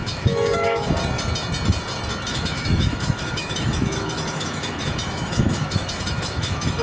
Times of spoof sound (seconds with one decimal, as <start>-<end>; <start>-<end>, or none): 0.0-0.9; 2.3-6.8